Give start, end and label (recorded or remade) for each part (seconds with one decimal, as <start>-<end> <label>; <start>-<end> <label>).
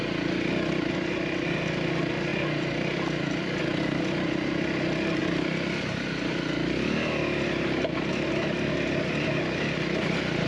0.0-10.5 recorded